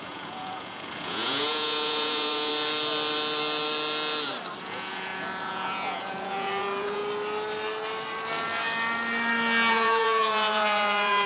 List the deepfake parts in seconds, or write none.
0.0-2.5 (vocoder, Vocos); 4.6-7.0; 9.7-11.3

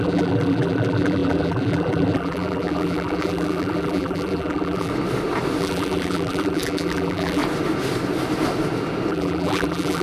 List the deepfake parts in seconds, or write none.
0.0-4.9 (vocoder, BigVGAN v2); 5.6-7.4; 9.1-10.0

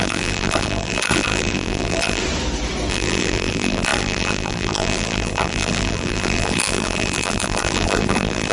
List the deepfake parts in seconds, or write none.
0.0-2.2 (vocoder, BigVGAN v2); 2.9-8.5

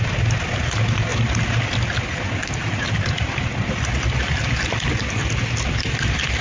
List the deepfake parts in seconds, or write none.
none

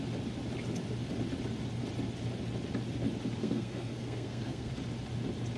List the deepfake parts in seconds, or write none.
3.4-4.7 (codec, SNAC)